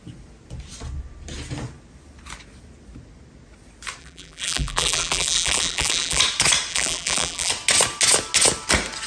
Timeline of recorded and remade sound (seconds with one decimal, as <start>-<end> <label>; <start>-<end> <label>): 0.0-4.0 recorded; 4.0-6.2 remade; 6.2-6.7 recorded; 6.7-7.5 remade; 7.5-9.1 recorded